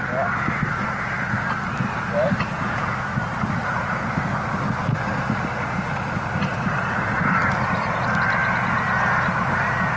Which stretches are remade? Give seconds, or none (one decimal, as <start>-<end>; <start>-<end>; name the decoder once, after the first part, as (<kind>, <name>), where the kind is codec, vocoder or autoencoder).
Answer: none